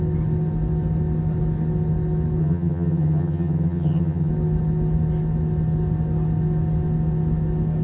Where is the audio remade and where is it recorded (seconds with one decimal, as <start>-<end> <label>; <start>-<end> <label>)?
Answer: 0.0-2.4 recorded; 2.4-4.3 remade; 4.3-7.8 recorded